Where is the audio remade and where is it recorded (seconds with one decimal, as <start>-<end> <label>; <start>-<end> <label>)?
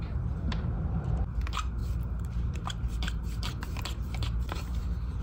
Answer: 0.0-5.2 remade